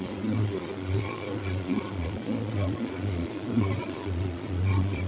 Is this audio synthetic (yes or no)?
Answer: yes